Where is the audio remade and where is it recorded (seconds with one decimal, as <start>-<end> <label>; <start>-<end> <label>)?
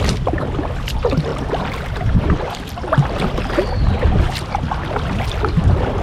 0.0-6.0 recorded